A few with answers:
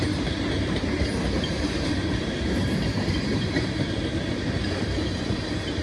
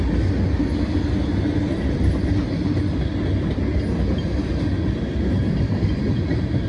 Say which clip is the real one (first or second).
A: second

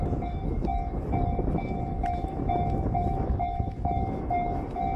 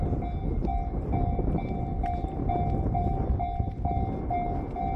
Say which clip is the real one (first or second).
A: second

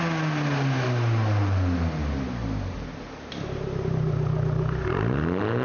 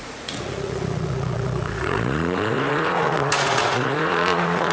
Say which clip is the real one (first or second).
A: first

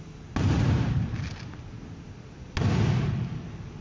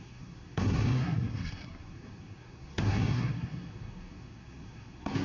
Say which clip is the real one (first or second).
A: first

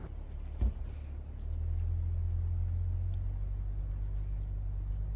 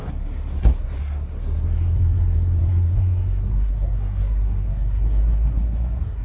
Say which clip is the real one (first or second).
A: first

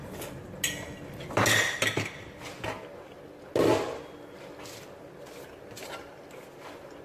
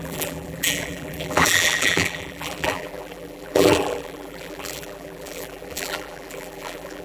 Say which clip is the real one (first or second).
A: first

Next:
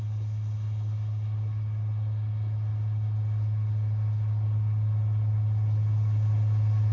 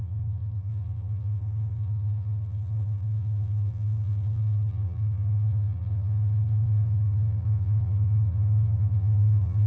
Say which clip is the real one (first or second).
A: first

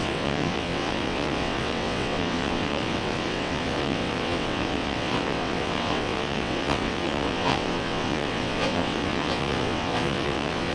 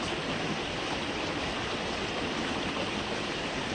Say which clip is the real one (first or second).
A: second